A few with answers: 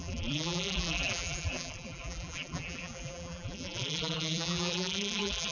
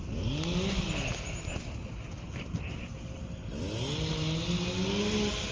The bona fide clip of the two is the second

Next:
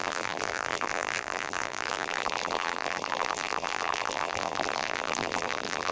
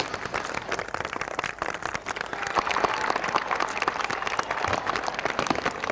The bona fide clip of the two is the second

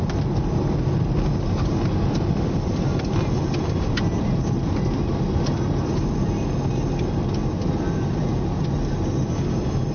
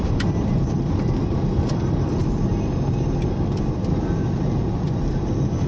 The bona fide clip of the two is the first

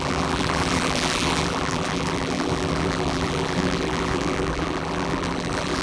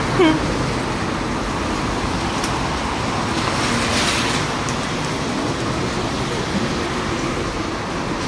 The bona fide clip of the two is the second